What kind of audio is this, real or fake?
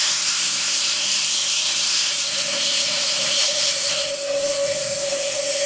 fake